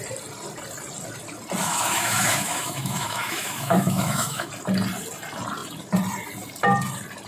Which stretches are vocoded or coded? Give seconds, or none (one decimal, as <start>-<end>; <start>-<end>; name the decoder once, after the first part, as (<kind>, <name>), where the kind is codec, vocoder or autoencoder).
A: 1.6-4.5 (autoencoder, DAC-VAE)